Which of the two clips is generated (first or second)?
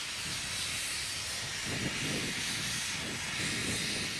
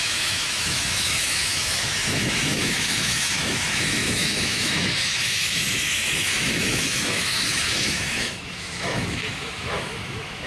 second